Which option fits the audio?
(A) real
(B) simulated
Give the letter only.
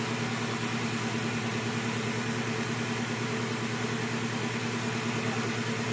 A